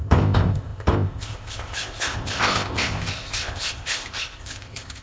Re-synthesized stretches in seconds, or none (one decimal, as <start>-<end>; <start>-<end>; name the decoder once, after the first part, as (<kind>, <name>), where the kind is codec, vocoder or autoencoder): 0.0-5.0 (codec, ZipCodec)